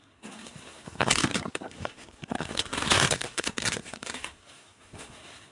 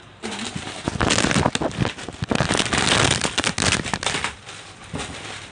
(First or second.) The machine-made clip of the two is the first